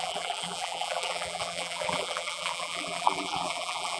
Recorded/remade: remade